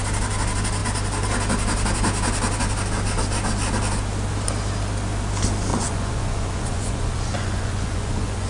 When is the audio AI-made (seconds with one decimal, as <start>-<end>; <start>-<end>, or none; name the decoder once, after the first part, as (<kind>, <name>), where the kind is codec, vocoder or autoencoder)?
5.7-8.5 (vocoder, Vocos)